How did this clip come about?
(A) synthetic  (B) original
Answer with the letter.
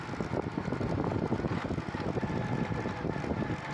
B